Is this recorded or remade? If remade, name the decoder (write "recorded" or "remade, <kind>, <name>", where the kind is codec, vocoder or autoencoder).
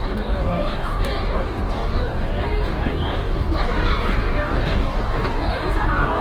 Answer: remade, codec, DAC